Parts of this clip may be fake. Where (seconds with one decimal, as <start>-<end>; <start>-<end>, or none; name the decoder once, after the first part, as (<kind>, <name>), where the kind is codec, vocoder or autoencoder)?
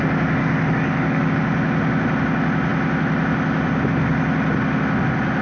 0.4-1.3 (codec, DAC)